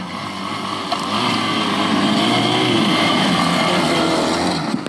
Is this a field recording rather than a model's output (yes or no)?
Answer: no